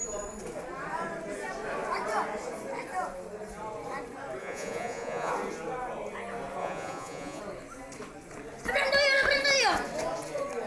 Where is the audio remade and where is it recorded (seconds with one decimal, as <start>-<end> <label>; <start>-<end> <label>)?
0.0-4.4 recorded; 4.4-5.3 remade; 5.3-6.6 recorded; 6.6-7.4 remade; 7.4-10.7 recorded